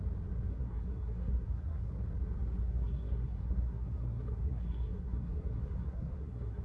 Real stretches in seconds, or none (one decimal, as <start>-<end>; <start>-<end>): 0.0-0.5; 1.9-2.6